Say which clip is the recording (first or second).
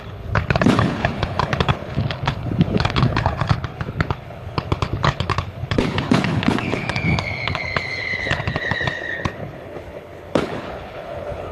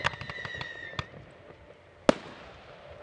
second